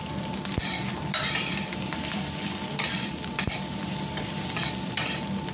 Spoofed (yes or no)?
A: yes